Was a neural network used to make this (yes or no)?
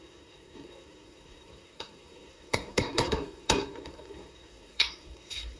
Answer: yes